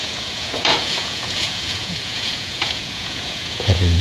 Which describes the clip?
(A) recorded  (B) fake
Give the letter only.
B